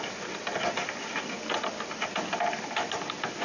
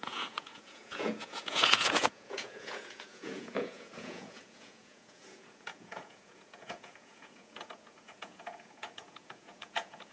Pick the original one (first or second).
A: first